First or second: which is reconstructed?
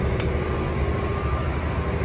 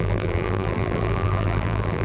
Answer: second